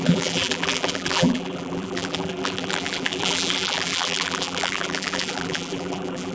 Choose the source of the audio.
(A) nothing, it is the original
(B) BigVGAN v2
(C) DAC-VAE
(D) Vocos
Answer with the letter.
B